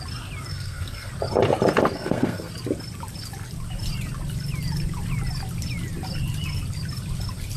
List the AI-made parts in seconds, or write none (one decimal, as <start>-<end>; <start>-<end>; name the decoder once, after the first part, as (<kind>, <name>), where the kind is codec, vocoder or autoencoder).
0.5-1.1 (codec, SNAC); 1.9-2.5